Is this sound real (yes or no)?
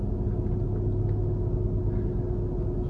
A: yes